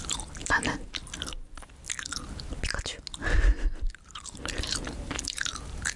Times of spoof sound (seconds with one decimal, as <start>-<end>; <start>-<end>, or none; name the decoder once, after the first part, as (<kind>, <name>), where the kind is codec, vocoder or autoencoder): 0.0-1.0 (vocoder, BigVGAN v2); 3.9-6.0